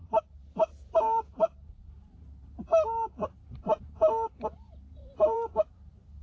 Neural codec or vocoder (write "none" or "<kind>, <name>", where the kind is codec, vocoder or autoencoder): vocoder, BigVGAN v2